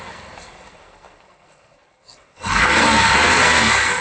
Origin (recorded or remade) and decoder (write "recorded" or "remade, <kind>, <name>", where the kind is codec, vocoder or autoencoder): remade, codec, SNAC